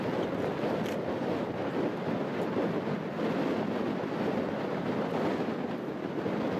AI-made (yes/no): no